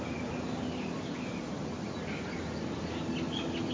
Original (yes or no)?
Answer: yes